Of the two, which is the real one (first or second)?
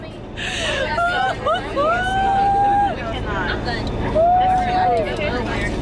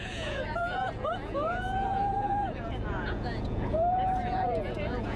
first